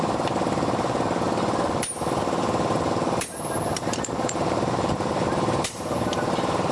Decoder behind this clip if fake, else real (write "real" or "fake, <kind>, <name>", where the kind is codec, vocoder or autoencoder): fake, vocoder, BigVGAN v2